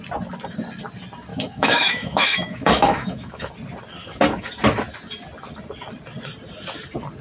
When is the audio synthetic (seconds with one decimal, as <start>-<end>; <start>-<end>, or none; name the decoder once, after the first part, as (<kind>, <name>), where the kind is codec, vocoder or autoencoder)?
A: 1.3-3.5 (autoencoder, DAC-VAE); 4.0-4.5